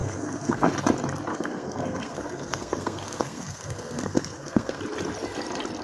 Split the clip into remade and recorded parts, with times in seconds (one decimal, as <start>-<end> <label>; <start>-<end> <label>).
0.0-0.7 remade; 0.7-1.3 recorded; 1.3-4.8 remade; 4.8-5.8 recorded